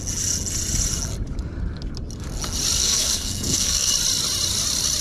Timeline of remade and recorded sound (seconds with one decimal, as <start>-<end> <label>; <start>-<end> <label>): 0.0-2.8 recorded; 2.8-3.9 remade; 3.9-5.0 recorded